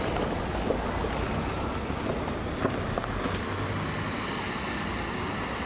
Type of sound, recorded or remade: recorded